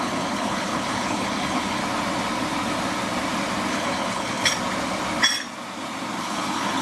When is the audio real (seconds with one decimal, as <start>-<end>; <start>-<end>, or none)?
1.8-3.7; 4.5-6.2